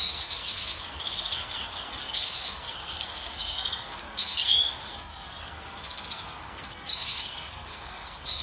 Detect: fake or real fake